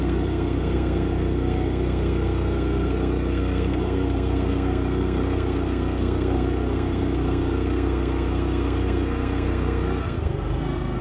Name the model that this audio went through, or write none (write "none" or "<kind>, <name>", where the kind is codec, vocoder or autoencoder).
codec, SNAC